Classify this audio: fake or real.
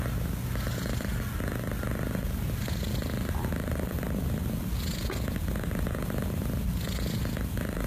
real